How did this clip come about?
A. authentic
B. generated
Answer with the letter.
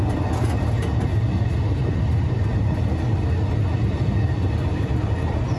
A